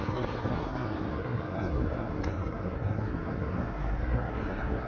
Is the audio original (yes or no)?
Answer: no